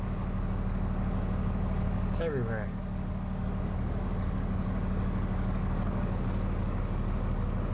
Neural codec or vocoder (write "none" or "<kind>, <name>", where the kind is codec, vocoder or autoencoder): codec, DAC